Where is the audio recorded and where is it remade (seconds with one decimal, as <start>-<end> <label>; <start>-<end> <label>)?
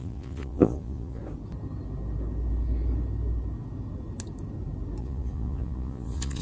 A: 0.0-1.2 remade; 1.2-5.0 recorded; 5.0-6.4 remade